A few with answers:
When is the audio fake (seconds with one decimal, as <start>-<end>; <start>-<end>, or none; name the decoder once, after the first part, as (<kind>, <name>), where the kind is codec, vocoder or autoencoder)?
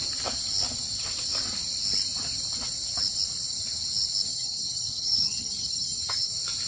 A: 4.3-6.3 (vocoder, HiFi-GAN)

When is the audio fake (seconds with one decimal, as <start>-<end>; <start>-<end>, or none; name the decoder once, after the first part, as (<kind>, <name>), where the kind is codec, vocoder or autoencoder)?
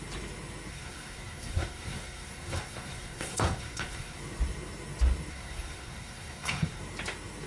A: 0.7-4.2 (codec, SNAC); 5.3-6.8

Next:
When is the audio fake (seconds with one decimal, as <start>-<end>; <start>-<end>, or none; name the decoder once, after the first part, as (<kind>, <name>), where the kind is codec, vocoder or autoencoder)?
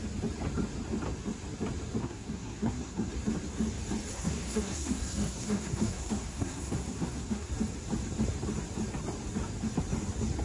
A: 2.0-3.1 (codec, SNAC); 4.1-7.5